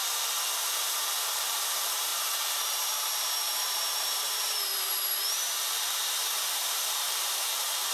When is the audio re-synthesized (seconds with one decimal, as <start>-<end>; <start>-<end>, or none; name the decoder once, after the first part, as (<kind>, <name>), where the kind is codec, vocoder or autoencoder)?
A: 0.0-7.9 (vocoder, BigVGAN v2)